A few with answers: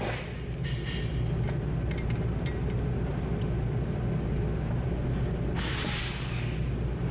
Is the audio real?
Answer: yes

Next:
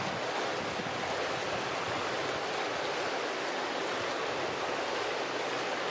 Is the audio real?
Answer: yes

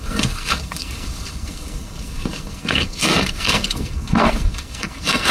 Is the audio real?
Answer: no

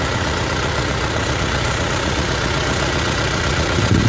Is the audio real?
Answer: no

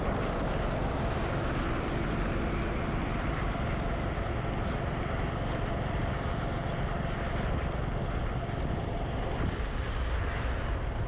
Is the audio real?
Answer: yes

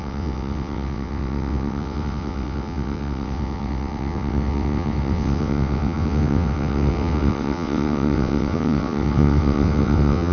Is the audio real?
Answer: no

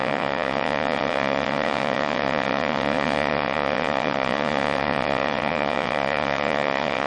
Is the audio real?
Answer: no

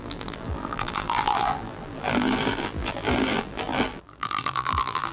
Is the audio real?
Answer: no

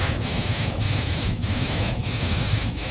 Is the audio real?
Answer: no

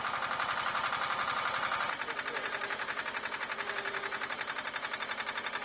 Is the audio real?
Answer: yes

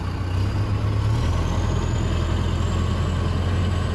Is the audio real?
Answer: yes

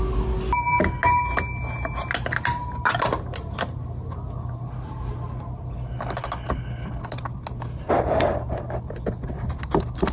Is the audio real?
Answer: yes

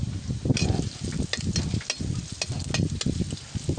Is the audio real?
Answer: yes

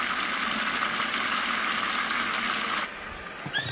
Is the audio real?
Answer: yes